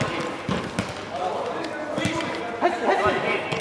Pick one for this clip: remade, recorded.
recorded